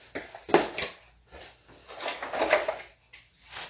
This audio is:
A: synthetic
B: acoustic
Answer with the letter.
B